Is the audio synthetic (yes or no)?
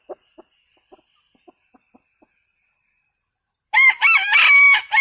no